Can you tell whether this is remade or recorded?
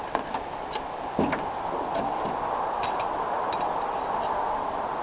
recorded